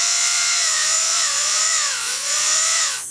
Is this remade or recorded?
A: remade